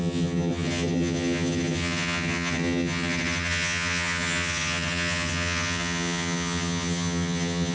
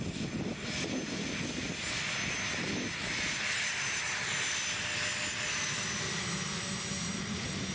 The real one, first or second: second